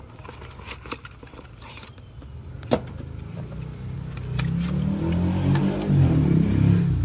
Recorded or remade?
recorded